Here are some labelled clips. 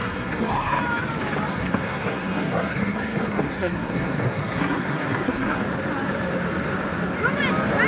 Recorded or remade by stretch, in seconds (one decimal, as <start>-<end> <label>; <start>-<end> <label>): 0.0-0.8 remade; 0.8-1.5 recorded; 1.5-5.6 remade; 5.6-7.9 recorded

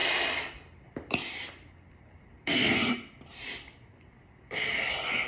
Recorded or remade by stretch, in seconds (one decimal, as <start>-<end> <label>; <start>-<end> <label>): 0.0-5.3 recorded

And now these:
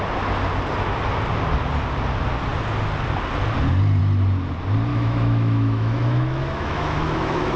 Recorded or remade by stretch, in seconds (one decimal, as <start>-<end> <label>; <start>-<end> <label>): 0.0-4.9 recorded; 4.9-7.6 remade

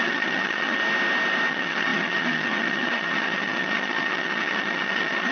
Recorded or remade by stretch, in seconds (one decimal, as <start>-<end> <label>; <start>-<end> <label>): 0.0-0.8 remade; 0.8-1.5 recorded; 1.5-5.3 remade